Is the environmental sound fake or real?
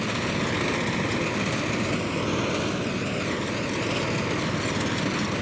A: real